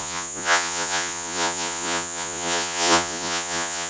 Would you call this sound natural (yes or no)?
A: no